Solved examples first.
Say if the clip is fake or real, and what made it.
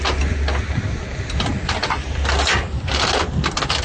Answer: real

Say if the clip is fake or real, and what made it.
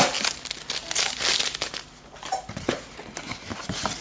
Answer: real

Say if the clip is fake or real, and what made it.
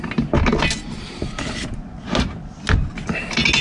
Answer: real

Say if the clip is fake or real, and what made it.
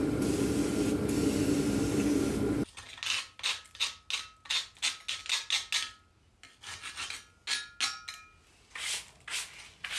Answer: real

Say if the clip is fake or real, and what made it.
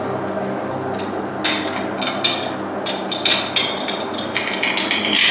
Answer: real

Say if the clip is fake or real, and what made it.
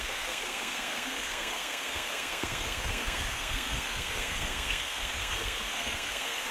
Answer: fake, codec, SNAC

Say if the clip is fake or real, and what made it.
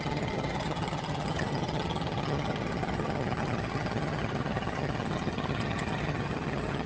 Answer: fake, vocoder, HiFi-GAN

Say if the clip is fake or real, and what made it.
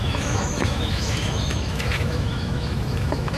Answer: fake, autoencoder, DAC-VAE